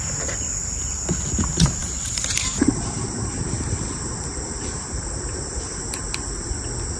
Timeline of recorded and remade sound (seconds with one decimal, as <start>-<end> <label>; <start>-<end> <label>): 0.0-1.8 recorded; 1.8-5.8 remade; 5.8-7.0 recorded

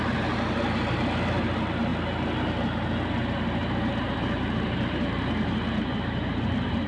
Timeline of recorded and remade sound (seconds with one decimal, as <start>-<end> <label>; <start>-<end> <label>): 0.0-3.6 recorded; 3.6-6.9 remade